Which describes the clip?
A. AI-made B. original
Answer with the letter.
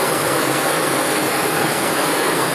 A